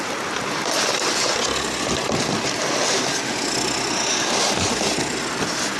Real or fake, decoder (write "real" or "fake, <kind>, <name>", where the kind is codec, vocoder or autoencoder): real